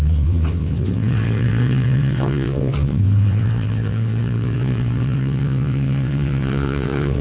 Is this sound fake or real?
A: fake